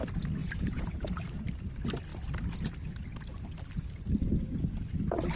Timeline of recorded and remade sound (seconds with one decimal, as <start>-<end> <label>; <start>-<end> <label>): 0.0-0.4 recorded; 0.4-1.1 remade; 1.1-5.4 recorded